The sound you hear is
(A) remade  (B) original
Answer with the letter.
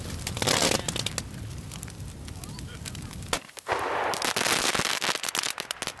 B